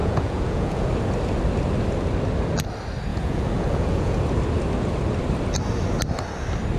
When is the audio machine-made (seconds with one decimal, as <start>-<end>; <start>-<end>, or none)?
0.0-0.9; 3.1-4.2